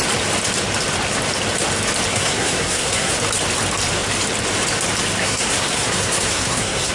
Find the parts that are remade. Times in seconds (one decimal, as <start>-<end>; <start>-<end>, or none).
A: 2.1-3.1; 5.2-6.9

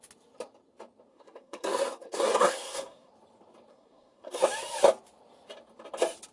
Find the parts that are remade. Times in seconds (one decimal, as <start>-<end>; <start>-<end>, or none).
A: 1.1-3.1; 3.7-4.4

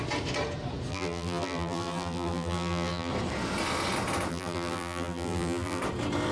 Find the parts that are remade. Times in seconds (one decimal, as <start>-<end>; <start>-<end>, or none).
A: 0.9-3.1; 4.3-5.8